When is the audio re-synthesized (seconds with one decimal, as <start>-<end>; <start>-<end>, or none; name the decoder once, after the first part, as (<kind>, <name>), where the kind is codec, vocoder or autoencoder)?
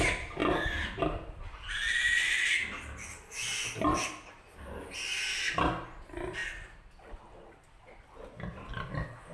none